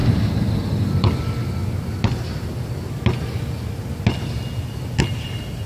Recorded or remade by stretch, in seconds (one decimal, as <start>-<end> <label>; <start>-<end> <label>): 0.0-0.5 remade; 0.5-5.7 recorded